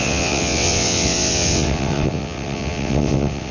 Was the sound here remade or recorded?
remade